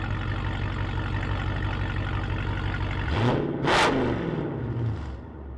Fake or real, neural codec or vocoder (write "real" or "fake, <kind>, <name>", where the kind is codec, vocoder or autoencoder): real